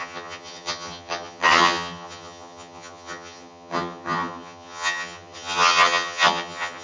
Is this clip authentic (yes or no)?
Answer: no